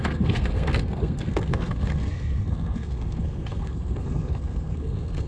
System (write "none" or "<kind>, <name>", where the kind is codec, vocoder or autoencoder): codec, SNAC